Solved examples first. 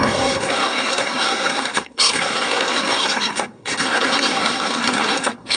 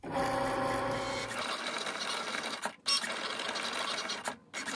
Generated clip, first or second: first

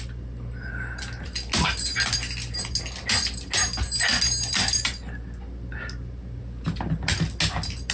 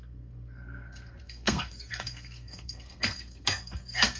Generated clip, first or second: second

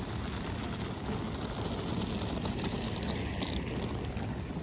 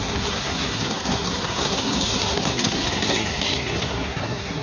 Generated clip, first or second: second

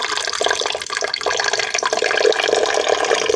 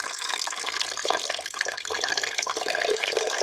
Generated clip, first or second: second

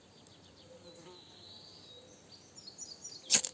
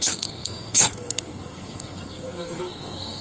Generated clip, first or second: second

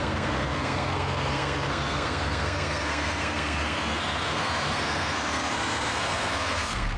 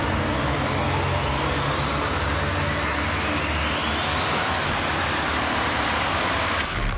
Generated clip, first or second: first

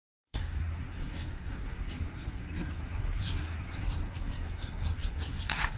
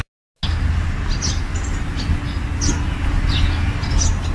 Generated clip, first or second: first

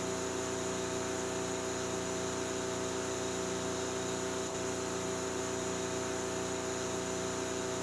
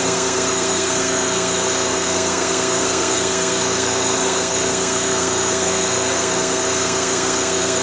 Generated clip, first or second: second